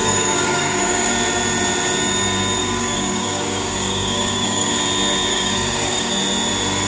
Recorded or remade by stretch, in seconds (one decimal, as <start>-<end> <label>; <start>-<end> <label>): 0.0-1.1 remade; 1.1-2.6 recorded; 2.6-4.7 remade; 4.7-5.3 recorded; 5.3-6.1 remade; 6.1-6.9 recorded